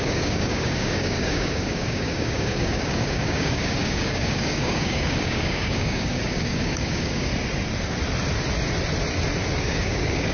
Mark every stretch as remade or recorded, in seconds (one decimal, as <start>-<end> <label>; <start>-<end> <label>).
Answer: 0.0-7.3 remade; 7.3-9.6 recorded; 9.6-10.3 remade